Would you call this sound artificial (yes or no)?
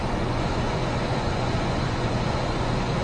yes